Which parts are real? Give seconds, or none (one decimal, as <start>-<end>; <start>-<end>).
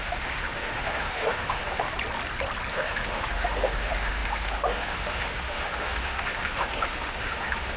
1.9-2.7